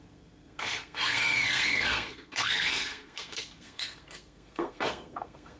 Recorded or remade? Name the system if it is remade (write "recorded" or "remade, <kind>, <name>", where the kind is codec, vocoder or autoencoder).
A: remade, codec, SNAC